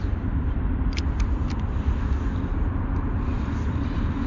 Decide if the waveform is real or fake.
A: real